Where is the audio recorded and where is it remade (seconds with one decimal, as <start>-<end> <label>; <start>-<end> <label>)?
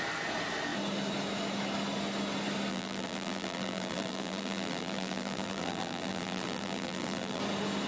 0.0-2.7 recorded; 2.7-7.4 remade; 7.4-7.9 recorded